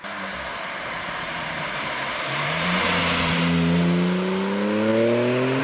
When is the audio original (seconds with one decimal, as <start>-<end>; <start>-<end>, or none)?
0.0-0.5; 3.0-5.6